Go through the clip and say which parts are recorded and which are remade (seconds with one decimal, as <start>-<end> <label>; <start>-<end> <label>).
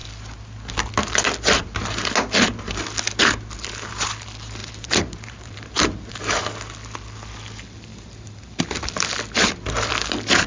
0.0-4.6 recorded; 4.6-6.2 remade; 6.2-7.9 recorded; 7.9-8.6 remade; 8.6-10.5 recorded